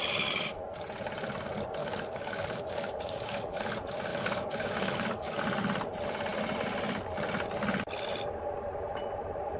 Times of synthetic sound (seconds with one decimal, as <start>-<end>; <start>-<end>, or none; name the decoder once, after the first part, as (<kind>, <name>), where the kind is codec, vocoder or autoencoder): 1.8-3.6 (codec, DAC); 4.1-5.4